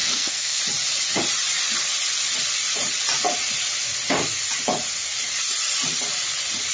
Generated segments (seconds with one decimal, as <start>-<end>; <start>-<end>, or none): 0.0-0.6